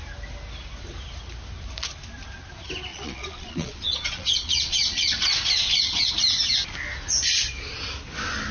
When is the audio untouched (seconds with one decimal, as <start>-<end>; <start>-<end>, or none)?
0.0-2.9; 6.1-8.5